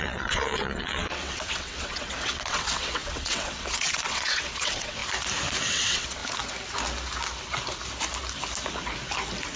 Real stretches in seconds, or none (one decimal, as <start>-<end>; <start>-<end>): 5.0-5.7; 6.2-9.6